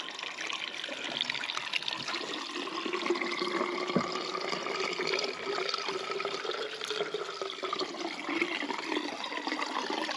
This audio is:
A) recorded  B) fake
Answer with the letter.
A